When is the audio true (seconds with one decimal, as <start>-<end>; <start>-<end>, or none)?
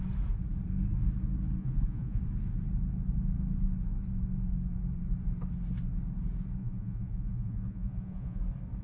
0.0-1.6; 2.2-6.6; 8.4-8.8